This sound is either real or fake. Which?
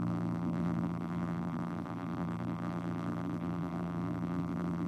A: fake